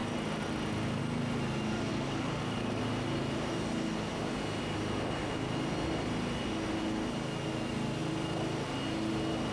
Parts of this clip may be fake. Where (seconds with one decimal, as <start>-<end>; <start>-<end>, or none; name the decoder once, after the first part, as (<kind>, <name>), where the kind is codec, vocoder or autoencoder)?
1.9-2.8 (codec, DAC)